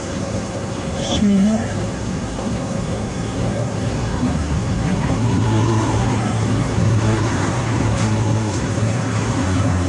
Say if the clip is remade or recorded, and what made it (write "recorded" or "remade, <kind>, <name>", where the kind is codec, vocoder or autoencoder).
remade, codec, SNAC